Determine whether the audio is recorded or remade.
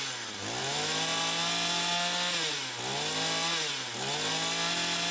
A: recorded